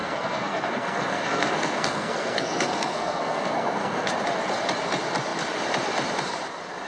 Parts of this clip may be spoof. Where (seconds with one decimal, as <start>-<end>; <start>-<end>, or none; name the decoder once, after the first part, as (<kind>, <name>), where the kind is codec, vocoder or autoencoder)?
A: 0.0-4.1 (codec, SNAC)